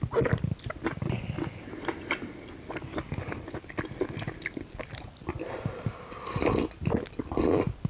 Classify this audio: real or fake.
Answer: real